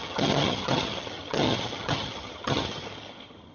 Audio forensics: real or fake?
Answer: fake